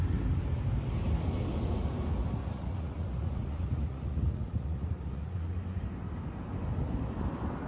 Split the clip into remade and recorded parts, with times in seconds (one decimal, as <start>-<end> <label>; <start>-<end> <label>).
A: 0.0-2.4 recorded; 2.4-5.5 remade; 5.5-7.7 recorded